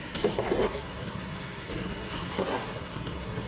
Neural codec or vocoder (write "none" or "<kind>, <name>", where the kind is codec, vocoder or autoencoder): codec, SNAC